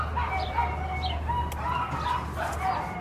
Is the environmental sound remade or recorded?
recorded